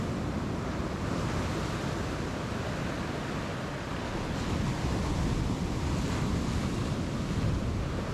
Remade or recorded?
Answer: recorded